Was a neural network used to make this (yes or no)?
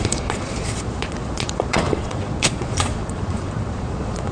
yes